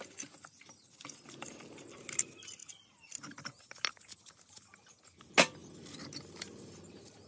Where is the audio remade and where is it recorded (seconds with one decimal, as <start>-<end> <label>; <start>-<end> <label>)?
0.0-7.3 recorded